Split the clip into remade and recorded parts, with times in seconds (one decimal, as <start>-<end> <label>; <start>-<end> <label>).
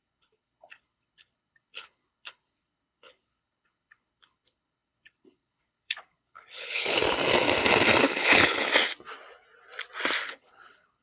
0.0-7.0 remade; 7.0-8.0 recorded; 8.0-8.7 remade; 8.7-10.2 recorded; 10.2-11.0 remade